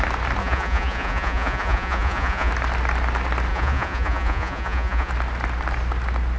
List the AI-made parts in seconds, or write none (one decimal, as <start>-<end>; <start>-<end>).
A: 0.4-2.5; 3.5-5.1